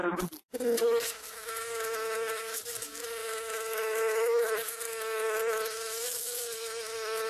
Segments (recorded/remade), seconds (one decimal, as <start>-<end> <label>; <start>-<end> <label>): 0.0-0.8 recorded; 0.8-7.3 remade